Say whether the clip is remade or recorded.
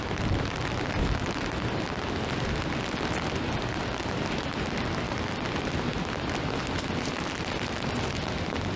recorded